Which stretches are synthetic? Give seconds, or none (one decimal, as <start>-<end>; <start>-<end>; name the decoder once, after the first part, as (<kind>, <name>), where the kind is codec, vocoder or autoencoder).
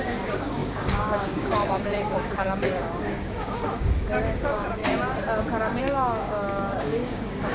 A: 0.0-4.8 (codec, DAC); 5.8-7.5